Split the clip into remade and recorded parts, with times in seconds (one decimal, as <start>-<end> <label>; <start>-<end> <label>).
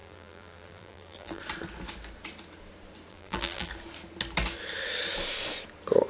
0.0-1.4 remade; 1.4-3.1 recorded; 3.1-3.7 remade; 3.7-6.1 recorded